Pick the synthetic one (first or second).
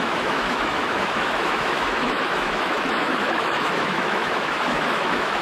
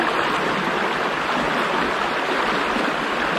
first